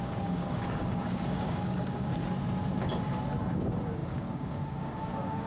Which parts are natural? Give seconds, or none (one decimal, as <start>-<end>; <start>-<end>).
2.2-3.5

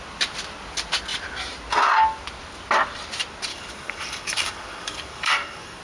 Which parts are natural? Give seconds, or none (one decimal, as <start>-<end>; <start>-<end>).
0.0-3.5

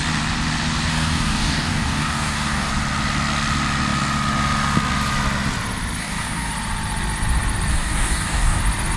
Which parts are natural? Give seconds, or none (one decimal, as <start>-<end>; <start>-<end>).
0.0-0.9; 2.7-6.0; 6.5-7.7; 8.6-9.0